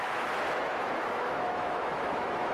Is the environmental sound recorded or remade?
remade